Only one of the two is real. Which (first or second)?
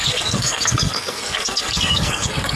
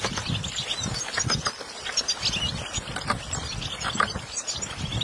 second